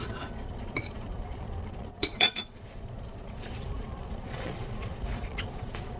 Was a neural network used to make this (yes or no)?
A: yes